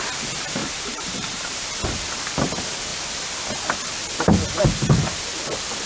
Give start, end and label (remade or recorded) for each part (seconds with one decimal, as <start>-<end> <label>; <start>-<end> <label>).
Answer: 0.0-0.6 recorded; 0.6-1.5 remade; 1.5-5.9 recorded